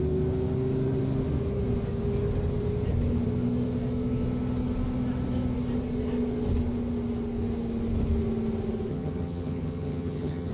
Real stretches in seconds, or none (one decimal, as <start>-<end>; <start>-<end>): 0.0-8.9